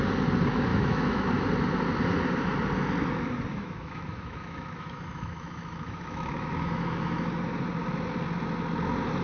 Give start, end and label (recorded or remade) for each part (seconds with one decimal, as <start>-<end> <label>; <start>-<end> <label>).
0.0-0.7 recorded; 0.7-1.3 remade; 1.3-3.5 recorded; 3.5-7.3 remade; 7.3-9.2 recorded